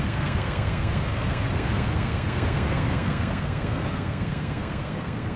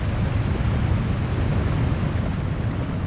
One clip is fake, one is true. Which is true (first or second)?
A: second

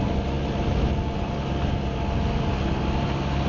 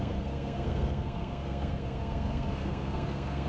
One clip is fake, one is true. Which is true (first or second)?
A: first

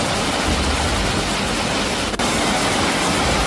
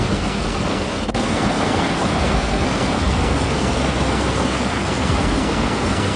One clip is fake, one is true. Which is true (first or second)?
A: first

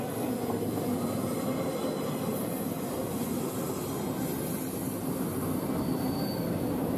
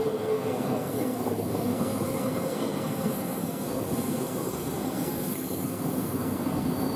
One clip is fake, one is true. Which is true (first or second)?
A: first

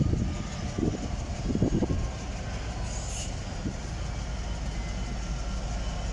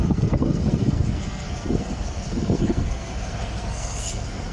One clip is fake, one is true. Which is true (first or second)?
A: first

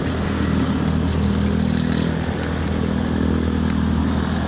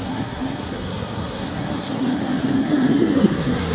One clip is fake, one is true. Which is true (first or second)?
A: first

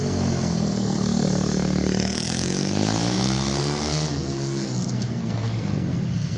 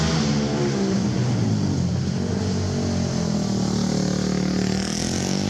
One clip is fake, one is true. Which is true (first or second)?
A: second